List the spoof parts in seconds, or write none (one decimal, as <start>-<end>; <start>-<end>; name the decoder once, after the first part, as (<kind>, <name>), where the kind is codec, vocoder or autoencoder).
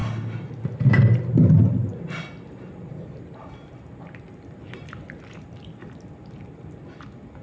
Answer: none